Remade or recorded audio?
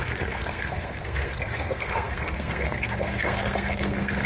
remade